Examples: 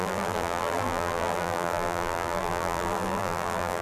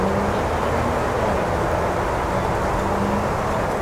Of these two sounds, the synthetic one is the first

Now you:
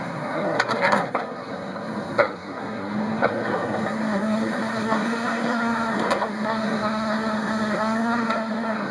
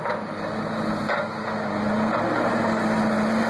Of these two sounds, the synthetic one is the first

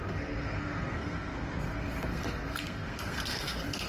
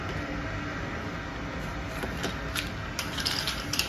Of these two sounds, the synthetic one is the first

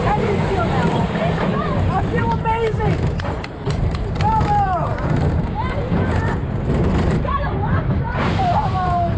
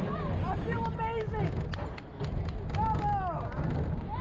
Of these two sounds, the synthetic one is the first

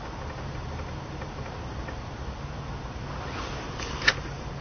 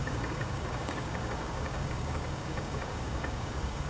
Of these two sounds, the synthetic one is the second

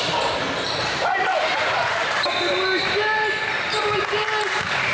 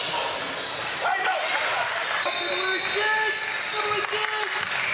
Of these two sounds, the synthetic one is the first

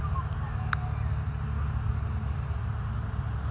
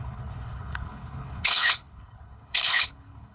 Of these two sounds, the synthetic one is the second